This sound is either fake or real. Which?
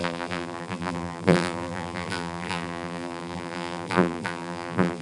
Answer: fake